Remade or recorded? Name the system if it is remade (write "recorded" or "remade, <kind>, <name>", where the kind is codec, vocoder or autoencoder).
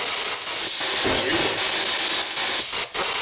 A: recorded